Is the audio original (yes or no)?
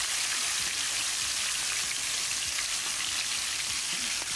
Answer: no